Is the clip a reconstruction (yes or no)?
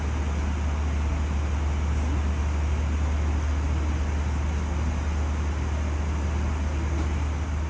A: no